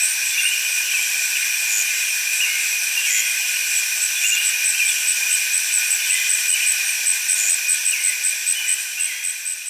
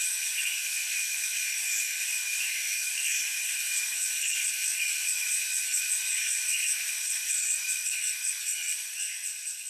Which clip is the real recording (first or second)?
first